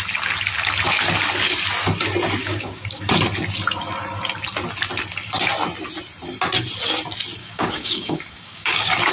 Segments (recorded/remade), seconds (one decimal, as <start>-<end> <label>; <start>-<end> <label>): 0.0-2.4 recorded; 2.4-3.0 remade; 3.0-7.4 recorded; 7.4-9.1 remade